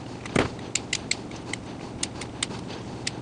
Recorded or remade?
recorded